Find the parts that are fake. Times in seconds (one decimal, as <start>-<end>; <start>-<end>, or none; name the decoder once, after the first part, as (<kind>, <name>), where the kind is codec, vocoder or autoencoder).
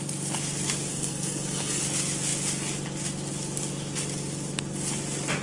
0.9-1.8 (codec, SNAC)